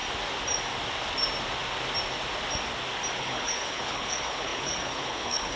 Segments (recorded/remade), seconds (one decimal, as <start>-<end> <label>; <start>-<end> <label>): 0.0-3.2 recorded; 3.2-5.6 remade